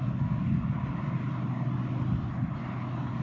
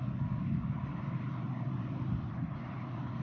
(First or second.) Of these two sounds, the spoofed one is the second